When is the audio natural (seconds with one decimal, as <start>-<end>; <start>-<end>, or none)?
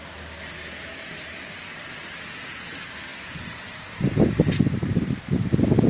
0.0-3.1; 3.8-5.9